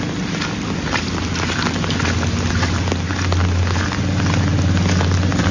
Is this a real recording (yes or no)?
yes